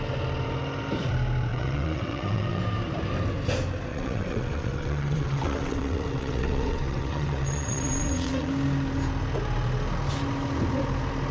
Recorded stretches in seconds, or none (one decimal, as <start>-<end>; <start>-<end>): 0.0-1.5; 2.6-3.9; 8.5-11.3